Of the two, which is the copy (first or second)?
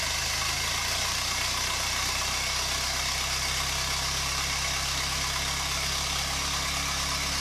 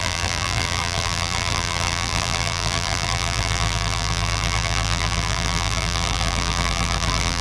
second